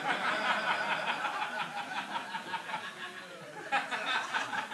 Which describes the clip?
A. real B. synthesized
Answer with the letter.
A